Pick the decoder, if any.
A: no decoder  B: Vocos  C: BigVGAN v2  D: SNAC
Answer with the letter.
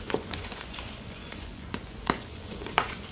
B